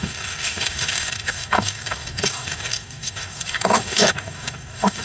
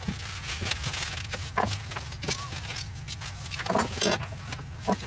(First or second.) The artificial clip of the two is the first